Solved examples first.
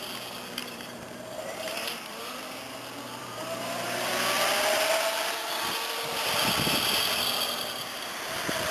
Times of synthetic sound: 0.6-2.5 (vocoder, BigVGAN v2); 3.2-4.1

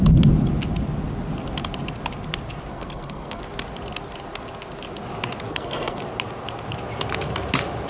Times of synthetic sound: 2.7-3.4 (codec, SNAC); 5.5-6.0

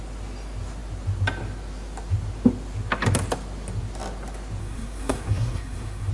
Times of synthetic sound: 4.6-6.1 (codec, SNAC)

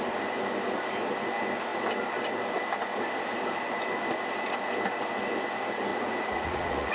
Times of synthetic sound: 5.9-6.9 (vocoder, Vocos)

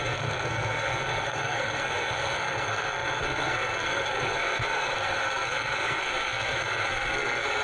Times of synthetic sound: 0.0-7.6 (codec, SNAC)

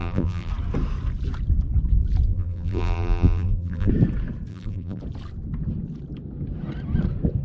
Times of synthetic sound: 0.0-0.5 (vocoder, BigVGAN v2); 2.3-3.9; 4.5-5.0